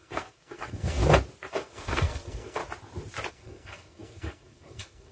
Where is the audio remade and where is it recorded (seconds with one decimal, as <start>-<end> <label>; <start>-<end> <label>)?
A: 0.0-1.0 remade; 1.0-1.5 recorded; 1.5-2.6 remade; 2.6-3.3 recorded; 3.3-5.1 remade